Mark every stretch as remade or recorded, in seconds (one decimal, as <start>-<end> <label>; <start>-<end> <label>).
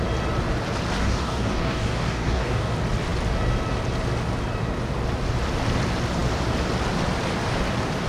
0.0-1.0 recorded; 1.0-2.7 remade; 2.7-8.1 recorded